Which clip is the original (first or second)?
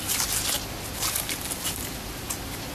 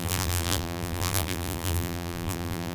first